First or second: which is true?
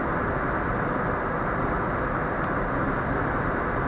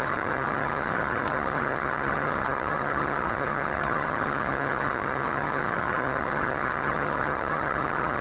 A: first